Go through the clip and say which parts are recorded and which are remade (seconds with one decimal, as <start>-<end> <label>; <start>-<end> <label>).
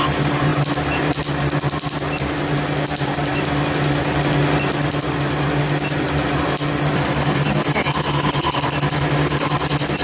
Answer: 0.0-10.0 recorded